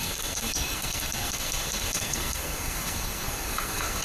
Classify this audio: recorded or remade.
remade